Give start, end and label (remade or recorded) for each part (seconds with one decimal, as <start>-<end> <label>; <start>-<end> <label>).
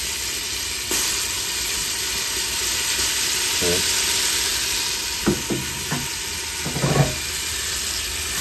0.0-8.4 recorded